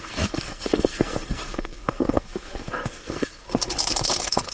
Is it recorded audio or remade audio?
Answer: remade